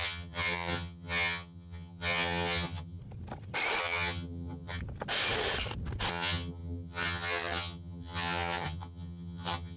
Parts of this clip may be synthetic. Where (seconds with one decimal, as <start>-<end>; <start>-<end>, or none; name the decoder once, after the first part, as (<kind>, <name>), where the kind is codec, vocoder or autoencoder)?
0.0-3.0 (vocoder, HiFi-GAN); 3.8-4.8; 6.1-9.8